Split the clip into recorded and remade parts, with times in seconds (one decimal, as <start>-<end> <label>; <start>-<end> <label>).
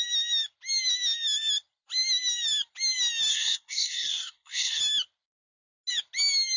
0.0-3.3 recorded; 3.3-4.8 remade; 4.8-6.6 recorded